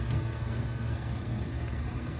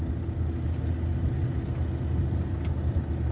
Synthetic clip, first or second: first